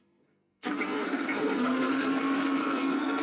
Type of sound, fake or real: fake